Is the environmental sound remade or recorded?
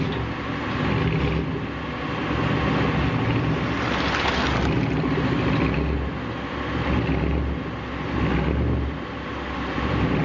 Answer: recorded